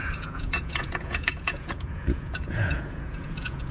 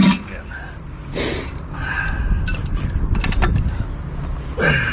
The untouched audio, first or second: second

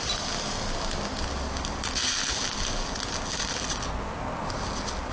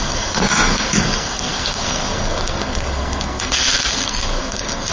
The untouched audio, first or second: first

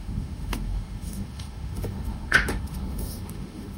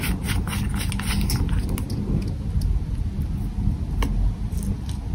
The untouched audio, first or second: second